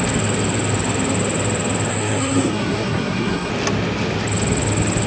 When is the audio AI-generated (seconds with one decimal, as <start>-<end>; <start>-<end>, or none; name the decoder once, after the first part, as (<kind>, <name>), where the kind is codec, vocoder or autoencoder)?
1.9-3.5 (codec, SNAC)